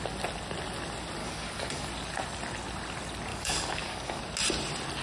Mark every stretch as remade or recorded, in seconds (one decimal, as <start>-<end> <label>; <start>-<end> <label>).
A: 0.0-1.2 recorded; 1.2-1.9 remade; 1.9-3.3 recorded; 3.3-4.2 remade; 4.2-5.0 recorded